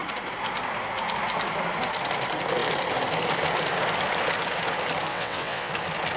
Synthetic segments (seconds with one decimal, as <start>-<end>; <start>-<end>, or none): 5.1-5.7